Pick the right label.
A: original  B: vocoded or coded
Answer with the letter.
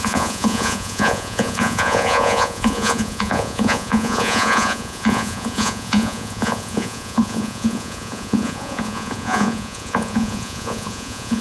B